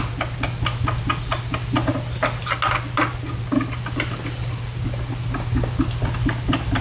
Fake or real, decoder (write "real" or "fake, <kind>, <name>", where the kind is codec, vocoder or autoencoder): real